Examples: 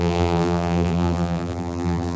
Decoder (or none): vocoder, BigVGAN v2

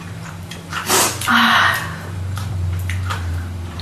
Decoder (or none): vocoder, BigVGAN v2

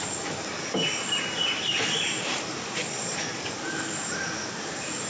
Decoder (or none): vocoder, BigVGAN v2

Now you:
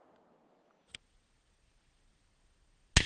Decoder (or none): none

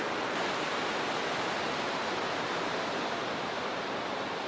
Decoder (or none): none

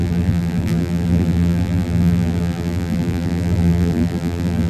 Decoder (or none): vocoder, BigVGAN v2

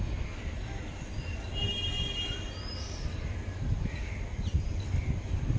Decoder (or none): none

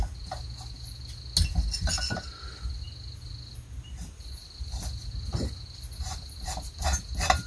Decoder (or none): none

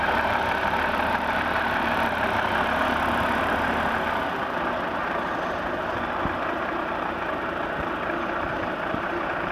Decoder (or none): vocoder, BigVGAN v2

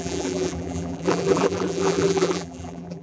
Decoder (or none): vocoder, BigVGAN v2